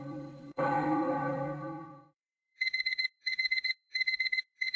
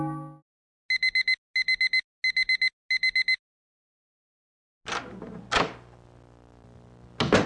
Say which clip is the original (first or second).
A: second